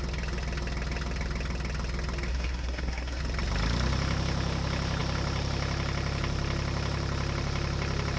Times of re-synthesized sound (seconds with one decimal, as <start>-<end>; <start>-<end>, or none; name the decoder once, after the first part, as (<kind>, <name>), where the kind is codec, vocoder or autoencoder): 2.3-3.2 (codec, SNAC)